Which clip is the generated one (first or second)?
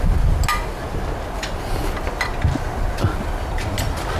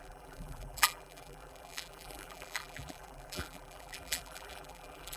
second